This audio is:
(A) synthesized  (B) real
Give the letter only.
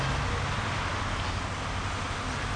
B